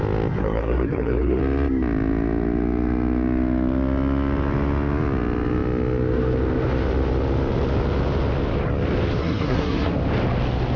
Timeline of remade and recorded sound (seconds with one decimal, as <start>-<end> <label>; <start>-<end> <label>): 0.0-0.4 recorded; 0.4-1.4 remade; 1.4-9.2 recorded; 9.2-9.9 remade; 9.9-10.8 recorded